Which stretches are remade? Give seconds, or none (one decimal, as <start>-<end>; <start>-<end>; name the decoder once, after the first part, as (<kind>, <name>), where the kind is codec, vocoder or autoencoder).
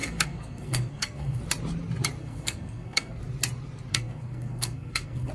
0.0-1.4 (codec, SNAC); 2.2-3.2; 3.9-5.3